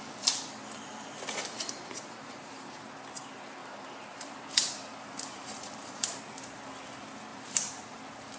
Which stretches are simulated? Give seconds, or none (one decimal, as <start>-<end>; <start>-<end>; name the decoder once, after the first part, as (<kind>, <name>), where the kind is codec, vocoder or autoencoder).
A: 1.4-2.9 (vocoder, BigVGAN v2); 3.6-6.2; 7.3-8.0